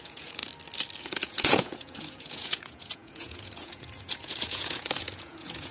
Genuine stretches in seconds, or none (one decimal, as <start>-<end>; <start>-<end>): 0.4-1.0